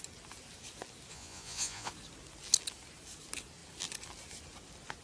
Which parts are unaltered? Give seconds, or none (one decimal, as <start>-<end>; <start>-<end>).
0.0-1.1; 1.9-5.0